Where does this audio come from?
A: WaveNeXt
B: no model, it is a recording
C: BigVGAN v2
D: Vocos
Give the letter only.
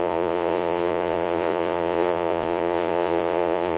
D